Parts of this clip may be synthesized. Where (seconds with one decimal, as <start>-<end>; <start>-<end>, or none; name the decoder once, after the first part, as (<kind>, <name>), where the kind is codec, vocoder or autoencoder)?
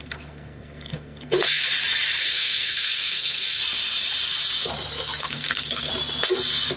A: 0.0-1.6 (codec, SNAC); 2.2-3.6; 5.2-5.9